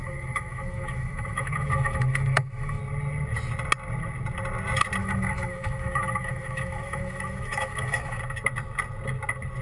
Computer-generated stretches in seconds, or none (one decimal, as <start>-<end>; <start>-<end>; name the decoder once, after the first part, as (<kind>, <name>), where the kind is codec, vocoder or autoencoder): 0.0-2.8 (autoencoder, DAC-VAE); 5.0-8.2

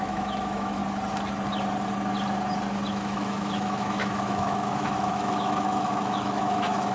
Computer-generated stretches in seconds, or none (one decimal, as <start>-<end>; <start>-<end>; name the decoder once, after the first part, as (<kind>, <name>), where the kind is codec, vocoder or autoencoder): 0.0-0.8 (autoencoder, DAC-VAE); 2.9-6.9

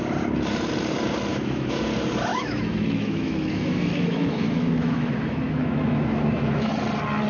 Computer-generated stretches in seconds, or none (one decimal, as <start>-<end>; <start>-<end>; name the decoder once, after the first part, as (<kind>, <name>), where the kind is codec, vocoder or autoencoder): 1.3-1.8 (autoencoder, DAC-VAE); 2.3-6.7

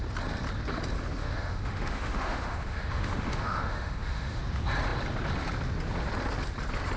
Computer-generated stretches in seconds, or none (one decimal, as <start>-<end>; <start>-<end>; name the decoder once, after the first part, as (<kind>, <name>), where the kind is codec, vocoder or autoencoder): 1.2-4.4 (autoencoder, DAC-VAE)